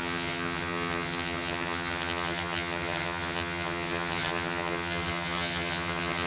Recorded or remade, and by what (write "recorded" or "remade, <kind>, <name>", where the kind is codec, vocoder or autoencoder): remade, vocoder, HiFi-GAN